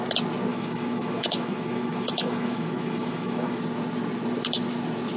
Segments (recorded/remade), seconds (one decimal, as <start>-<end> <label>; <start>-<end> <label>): 0.0-0.5 recorded; 0.5-3.6 remade; 3.6-5.2 recorded